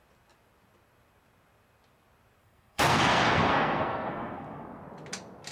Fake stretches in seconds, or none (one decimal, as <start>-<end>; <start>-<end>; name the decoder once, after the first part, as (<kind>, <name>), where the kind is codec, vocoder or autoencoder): 2.4-4.8 (codec, SNAC)

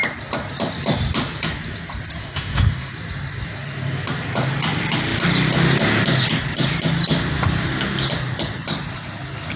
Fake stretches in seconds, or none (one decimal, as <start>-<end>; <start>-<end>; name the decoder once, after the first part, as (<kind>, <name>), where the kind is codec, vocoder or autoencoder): 2.2-2.9 (autoencoder, DAC-VAE)